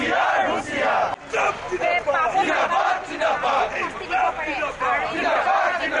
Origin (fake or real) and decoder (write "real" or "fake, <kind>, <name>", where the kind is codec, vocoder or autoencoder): real